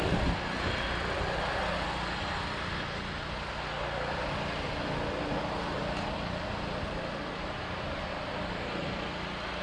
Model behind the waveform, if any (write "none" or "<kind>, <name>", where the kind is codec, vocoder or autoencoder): none